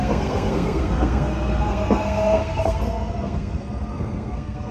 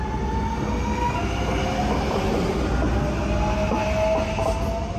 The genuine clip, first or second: second